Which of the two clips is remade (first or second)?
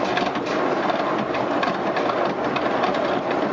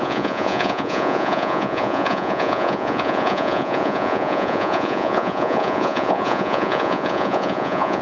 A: second